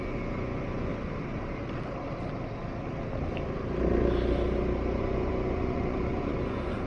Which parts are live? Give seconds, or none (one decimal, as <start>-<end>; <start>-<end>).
0.9-5.0